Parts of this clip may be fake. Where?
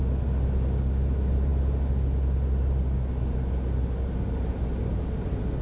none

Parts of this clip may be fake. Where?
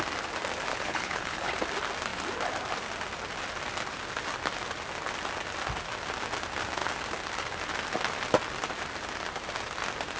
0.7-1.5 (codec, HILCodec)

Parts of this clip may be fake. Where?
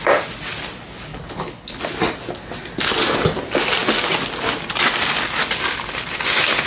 1.1-1.8 (codec, HILCodec)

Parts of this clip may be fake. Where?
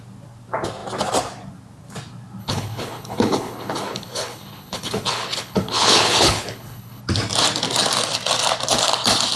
2.4-7.0 (codec, HILCodec)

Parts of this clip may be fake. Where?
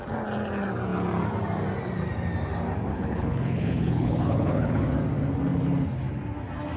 2.9-4.8 (codec, HILCodec)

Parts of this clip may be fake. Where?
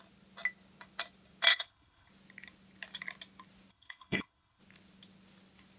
1.5-2.1 (codec, HILCodec); 3.7-4.6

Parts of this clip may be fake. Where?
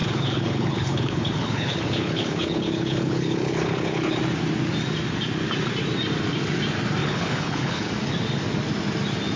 0.0-4.2 (codec, HILCodec); 7.0-7.9